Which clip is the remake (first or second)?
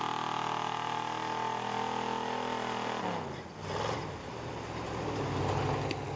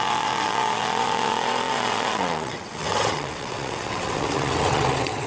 second